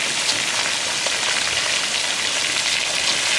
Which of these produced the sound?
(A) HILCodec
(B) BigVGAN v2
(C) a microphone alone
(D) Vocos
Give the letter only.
C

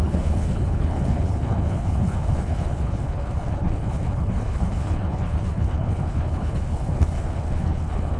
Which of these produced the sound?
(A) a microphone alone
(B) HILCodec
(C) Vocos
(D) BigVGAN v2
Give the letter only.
B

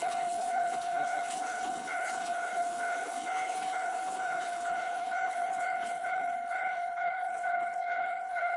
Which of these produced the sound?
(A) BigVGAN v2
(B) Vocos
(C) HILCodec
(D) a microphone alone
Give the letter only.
C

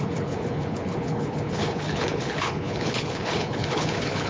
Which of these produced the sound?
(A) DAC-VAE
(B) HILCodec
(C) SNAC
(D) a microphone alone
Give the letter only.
B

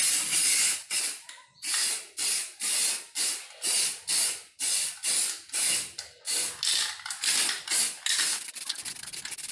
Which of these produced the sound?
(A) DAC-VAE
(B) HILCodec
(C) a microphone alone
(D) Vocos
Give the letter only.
C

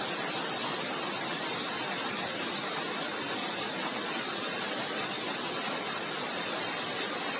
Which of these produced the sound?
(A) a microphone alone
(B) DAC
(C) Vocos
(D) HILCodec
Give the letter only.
A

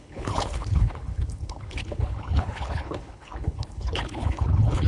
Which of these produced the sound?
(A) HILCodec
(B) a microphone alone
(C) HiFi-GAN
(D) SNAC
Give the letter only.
A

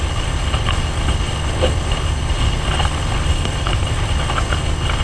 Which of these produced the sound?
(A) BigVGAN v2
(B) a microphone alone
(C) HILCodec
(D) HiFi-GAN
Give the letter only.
C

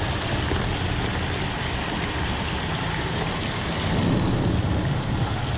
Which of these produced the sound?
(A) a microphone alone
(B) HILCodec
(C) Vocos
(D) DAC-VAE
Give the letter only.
A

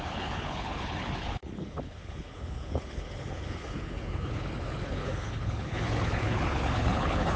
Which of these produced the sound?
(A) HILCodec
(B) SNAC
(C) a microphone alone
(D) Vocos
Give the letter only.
A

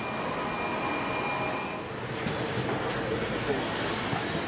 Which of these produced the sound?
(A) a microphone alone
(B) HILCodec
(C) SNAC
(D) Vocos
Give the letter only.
A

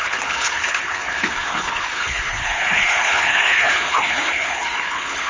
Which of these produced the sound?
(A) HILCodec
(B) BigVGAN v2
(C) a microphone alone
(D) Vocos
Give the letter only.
A